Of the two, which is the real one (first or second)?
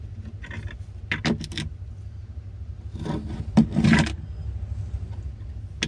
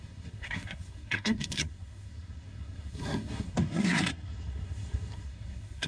first